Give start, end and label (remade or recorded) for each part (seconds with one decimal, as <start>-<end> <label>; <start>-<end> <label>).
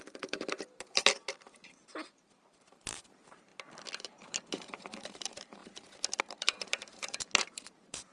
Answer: 0.0-3.5 remade; 3.5-4.0 recorded; 4.0-5.6 remade; 5.6-6.2 recorded; 6.2-8.1 remade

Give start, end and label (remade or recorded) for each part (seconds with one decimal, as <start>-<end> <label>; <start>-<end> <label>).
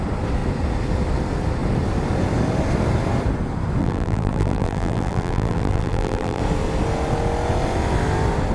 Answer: 0.0-3.8 recorded; 3.8-6.4 remade; 6.4-8.5 recorded